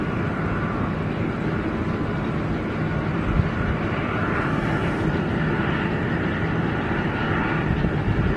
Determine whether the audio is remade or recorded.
remade